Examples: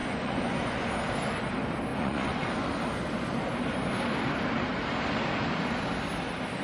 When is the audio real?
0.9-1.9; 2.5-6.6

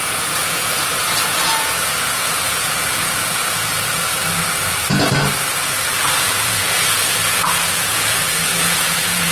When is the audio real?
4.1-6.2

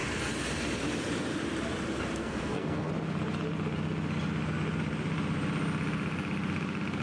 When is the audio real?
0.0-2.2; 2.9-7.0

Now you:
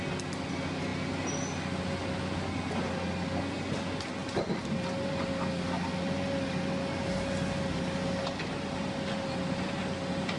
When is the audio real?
0.0-10.4

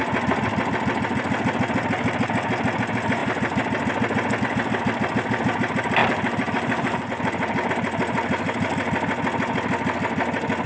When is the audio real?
0.0-6.0; 7.7-10.7

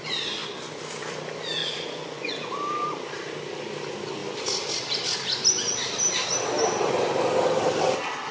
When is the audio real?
0.0-1.6; 2.5-8.3

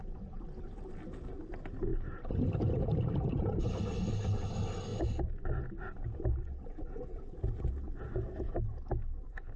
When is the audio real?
0.0-9.6

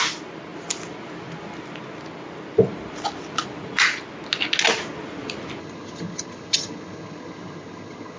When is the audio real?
0.0-5.6